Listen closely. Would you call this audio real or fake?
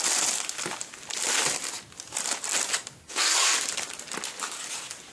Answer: real